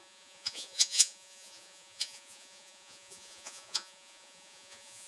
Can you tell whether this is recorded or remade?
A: remade